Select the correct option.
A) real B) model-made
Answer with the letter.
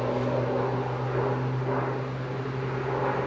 A